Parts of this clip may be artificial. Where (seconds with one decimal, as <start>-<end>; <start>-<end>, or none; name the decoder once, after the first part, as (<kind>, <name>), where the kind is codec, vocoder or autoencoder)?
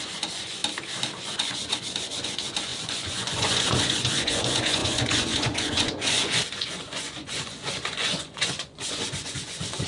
0.0-0.6 (vocoder, Vocos); 1.2-9.9